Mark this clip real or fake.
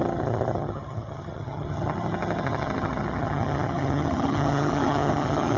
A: fake